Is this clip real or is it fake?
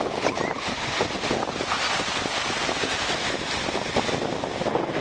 real